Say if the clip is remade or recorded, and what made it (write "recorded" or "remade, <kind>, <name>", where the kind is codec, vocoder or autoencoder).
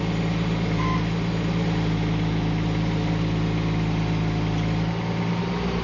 recorded